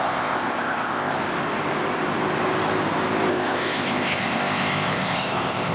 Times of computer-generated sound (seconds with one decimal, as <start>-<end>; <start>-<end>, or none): 0.0-1.1; 3.3-5.7